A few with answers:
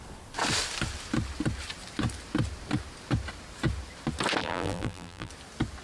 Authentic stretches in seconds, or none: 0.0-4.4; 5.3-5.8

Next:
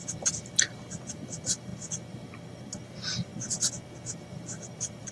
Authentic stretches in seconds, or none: 3.3-4.2

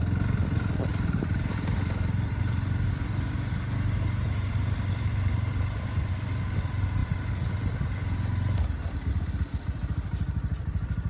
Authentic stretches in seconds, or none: 0.0-0.9; 5.9-11.1

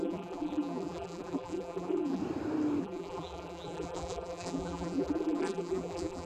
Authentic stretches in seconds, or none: 2.2-2.8

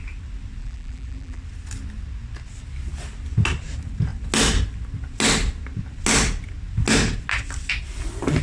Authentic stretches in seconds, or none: 0.0-0.6; 1.4-8.4

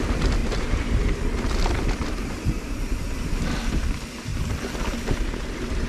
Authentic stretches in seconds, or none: 0.0-0.4; 1.0-5.9

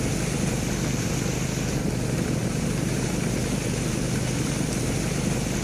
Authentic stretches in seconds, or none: 0.0-2.4; 3.1-5.6

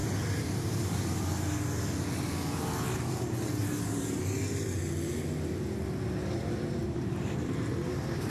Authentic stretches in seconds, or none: 1.0-3.6; 4.5-6.2